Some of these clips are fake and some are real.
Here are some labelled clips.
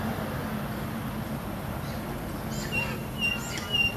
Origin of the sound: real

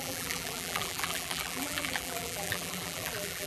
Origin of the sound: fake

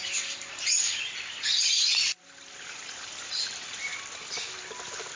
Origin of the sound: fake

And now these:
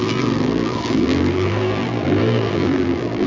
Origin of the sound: fake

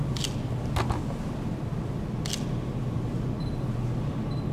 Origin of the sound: real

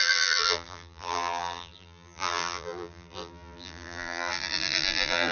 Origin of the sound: fake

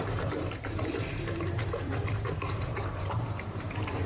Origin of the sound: fake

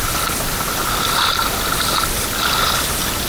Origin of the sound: real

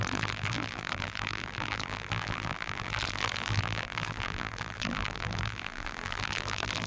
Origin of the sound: fake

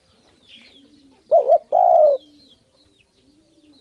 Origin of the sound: real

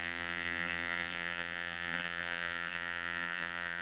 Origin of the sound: fake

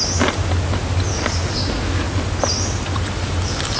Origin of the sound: real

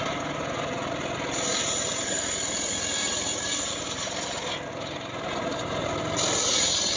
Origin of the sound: real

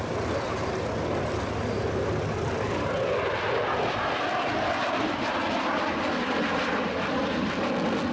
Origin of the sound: fake